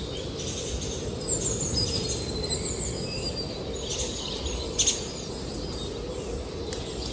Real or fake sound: real